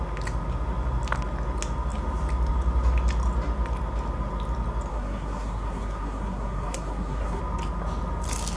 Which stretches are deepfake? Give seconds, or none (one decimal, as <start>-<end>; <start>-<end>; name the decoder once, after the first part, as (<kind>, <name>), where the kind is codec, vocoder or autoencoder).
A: 4.9-7.4 (codec, SNAC)